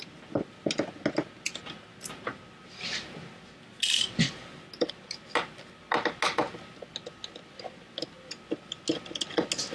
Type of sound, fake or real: real